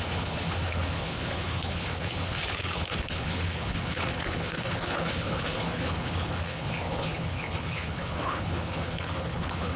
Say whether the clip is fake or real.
fake